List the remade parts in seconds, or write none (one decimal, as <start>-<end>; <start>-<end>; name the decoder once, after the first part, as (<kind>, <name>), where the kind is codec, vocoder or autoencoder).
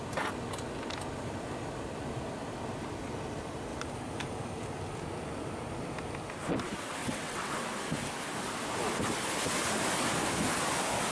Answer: 7.0-7.5 (vocoder, WaveNeXt)